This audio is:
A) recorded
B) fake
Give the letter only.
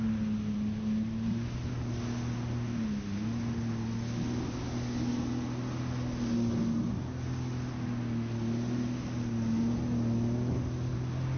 A